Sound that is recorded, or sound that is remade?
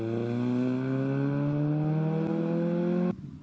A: recorded